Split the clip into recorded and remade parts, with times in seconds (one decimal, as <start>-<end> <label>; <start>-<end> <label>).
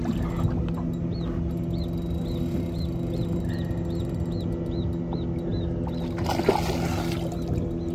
0.0-7.9 recorded